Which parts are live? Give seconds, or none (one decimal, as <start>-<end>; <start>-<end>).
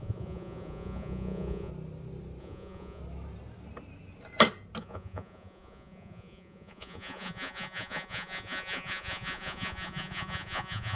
1.7-2.4; 3.0-4.8